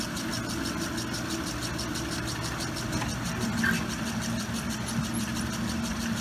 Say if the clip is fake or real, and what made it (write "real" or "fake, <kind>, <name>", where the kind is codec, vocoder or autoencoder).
real